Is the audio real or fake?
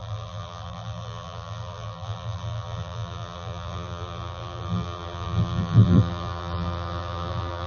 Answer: fake